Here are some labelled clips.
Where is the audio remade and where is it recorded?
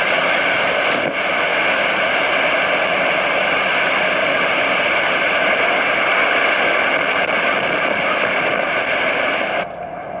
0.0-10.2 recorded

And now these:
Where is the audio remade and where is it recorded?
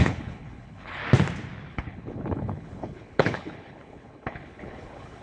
0.0-1.0 remade; 1.0-1.7 recorded; 1.7-5.2 remade